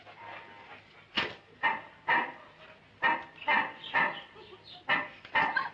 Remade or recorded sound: recorded